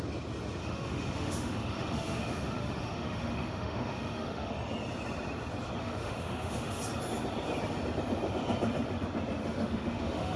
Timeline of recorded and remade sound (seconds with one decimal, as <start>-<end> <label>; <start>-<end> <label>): 0.0-0.6 recorded; 0.6-4.5 remade; 4.5-5.8 recorded; 5.8-6.8 remade; 6.8-9.4 recorded; 9.4-10.4 remade